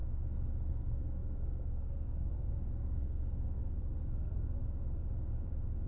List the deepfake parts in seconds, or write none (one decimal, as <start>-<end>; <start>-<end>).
0.7-4.6